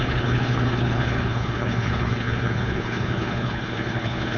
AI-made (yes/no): yes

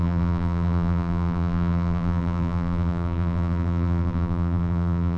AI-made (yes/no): yes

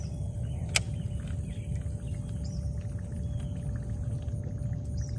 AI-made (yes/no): no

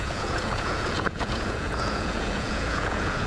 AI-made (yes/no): yes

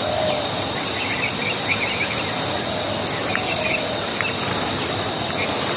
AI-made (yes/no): no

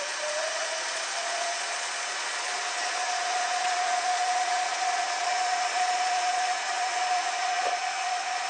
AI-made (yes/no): yes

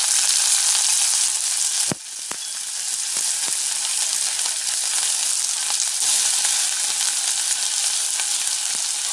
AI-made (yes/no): no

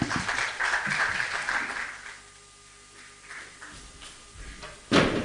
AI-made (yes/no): no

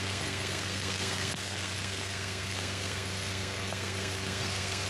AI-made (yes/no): yes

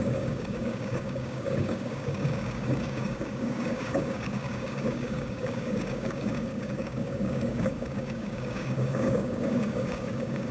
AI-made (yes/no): yes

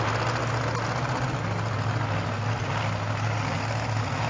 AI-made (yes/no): no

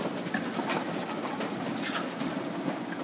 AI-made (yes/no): no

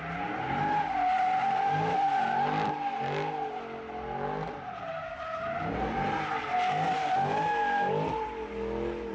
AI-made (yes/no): no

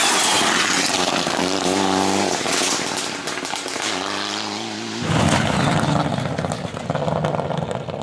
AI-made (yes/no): no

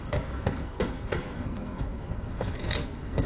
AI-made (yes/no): yes